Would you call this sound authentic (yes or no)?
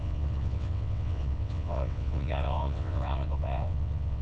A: no